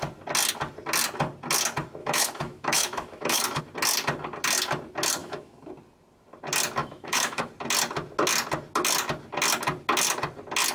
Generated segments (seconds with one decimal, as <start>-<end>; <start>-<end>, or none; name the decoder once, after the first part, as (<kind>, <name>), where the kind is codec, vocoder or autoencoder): 2.0-3.6 (autoencoder, DAC-VAE); 5.2-5.7; 6.8-7.5